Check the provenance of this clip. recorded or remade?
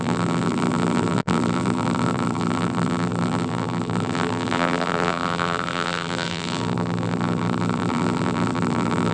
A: remade